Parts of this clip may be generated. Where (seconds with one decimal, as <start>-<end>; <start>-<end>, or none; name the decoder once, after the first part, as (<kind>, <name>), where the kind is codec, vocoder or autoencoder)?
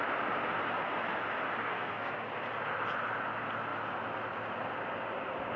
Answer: 1.6-2.1 (codec, SNAC)